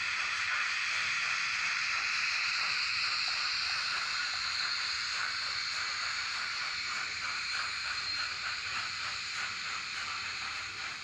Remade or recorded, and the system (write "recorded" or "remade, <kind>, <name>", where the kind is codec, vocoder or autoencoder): remade, vocoder, BigVGAN v2